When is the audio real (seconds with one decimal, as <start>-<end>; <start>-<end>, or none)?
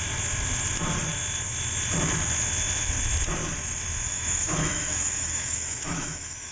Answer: 0.0-4.1